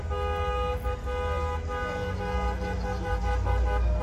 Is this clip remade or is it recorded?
recorded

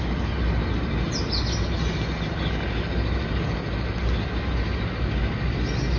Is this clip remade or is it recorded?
recorded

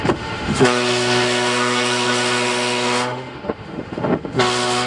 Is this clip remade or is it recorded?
remade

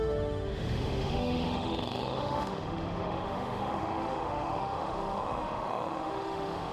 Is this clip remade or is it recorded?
remade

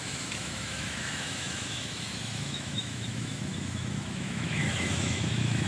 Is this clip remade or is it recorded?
remade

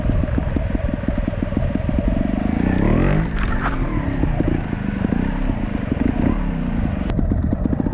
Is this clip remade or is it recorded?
recorded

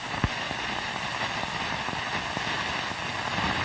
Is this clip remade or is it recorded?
recorded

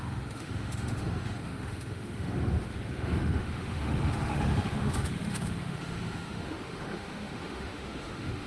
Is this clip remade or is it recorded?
remade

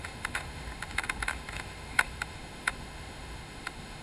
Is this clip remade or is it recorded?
remade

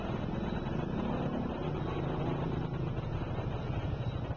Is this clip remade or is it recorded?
recorded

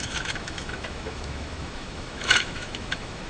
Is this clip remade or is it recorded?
remade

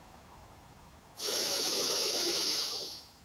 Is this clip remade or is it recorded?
remade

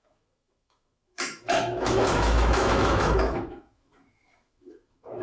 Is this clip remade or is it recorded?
remade